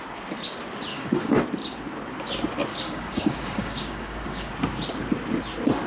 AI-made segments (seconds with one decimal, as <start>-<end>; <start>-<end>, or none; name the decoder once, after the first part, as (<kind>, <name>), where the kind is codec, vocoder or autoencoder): 0.9-1.4 (codec, DAC); 2.7-4.5